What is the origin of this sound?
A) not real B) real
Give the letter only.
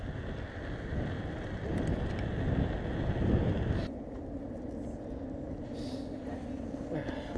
B